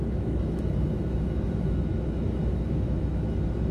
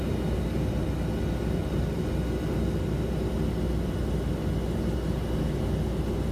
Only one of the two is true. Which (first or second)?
second